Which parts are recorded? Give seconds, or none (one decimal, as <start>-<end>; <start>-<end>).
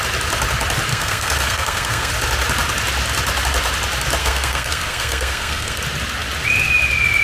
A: 0.0-0.9; 2.1-4.2; 5.8-7.2